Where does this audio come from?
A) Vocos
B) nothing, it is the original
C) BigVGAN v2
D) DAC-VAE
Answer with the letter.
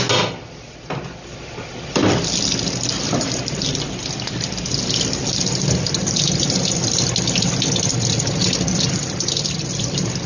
B